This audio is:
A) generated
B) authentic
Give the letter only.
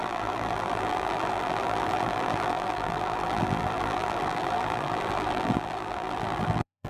A